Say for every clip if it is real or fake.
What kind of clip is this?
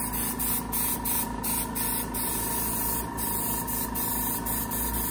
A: real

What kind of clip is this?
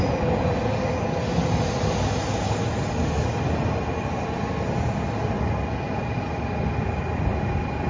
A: real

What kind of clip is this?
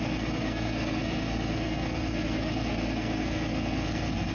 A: fake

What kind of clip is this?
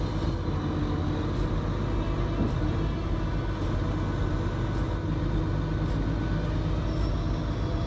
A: real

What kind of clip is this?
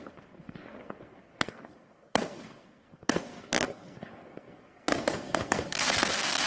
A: fake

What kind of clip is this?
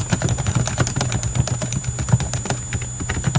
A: real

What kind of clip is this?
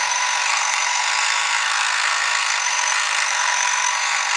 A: fake